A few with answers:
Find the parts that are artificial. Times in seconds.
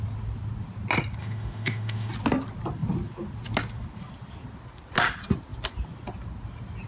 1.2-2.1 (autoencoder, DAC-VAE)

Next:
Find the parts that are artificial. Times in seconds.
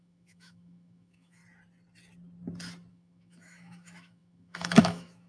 0.0-1.4 (autoencoder, DAC-VAE); 2.9-5.3